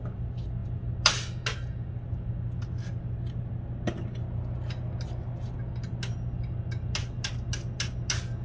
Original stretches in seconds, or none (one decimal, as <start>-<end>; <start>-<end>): 0.0-8.4